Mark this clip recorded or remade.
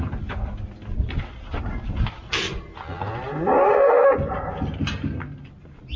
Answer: recorded